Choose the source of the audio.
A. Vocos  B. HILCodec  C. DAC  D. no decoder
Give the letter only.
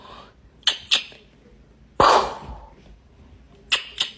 D